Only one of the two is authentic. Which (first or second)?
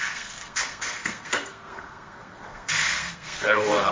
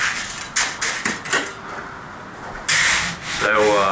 second